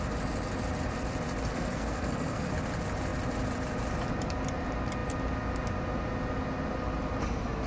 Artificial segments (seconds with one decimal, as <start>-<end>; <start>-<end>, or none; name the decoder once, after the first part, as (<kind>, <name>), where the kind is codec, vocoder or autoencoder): 1.5-2.5 (codec, SNAC)